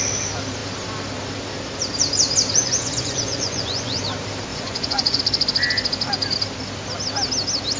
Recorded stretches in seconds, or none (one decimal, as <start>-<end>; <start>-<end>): 0.0-2.6; 4.0-4.5; 5.2-7.8